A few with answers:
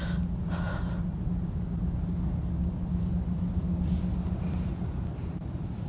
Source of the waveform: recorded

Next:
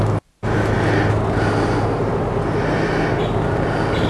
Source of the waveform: recorded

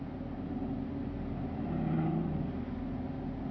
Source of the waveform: recorded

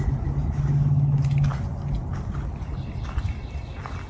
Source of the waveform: recorded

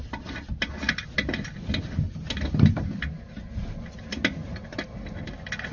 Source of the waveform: recorded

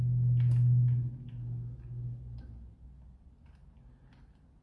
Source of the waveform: recorded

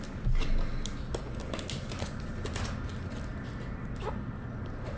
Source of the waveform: recorded